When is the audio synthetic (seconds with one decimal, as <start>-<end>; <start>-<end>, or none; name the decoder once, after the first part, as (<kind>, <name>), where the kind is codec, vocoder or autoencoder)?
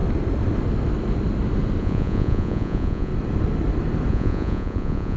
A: 1.8-3.1 (vocoder, Vocos); 4.1-5.2